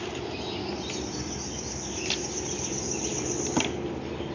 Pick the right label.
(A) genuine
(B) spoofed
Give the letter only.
A